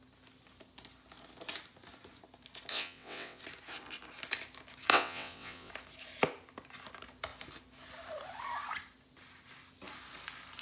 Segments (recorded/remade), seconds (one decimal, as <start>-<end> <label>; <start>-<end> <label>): 0.0-2.7 recorded; 2.7-3.4 remade; 3.4-4.9 recorded; 4.9-5.7 remade; 5.7-10.6 recorded